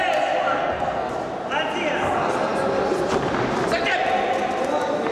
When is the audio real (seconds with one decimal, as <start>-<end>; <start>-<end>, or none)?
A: 0.0-0.5; 1.1-5.1